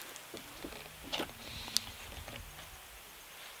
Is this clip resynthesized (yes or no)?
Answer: no